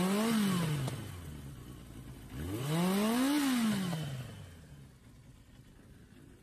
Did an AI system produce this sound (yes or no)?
no